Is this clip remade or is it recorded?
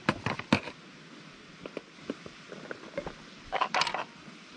recorded